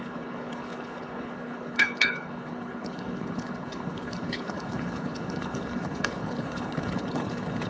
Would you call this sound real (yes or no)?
no